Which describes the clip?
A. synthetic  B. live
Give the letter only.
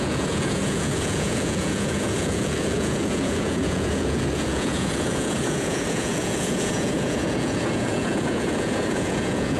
A